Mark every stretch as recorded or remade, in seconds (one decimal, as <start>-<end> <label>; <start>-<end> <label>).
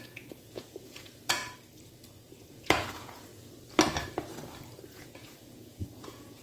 0.0-1.4 remade; 1.4-2.5 recorded; 2.5-3.3 remade; 3.3-4.9 recorded; 4.9-6.4 remade